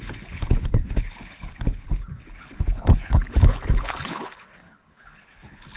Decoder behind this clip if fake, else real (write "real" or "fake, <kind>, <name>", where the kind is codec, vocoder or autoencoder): fake, codec, HILCodec